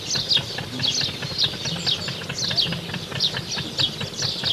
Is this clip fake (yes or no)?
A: no